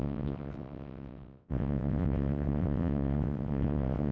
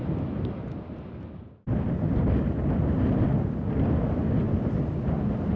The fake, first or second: first